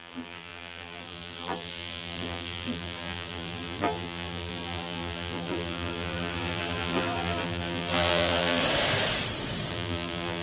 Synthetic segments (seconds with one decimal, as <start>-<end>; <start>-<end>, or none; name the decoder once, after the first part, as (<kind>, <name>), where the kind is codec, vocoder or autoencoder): 0.0-8.6 (vocoder, BigVGAN v2); 9.7-10.4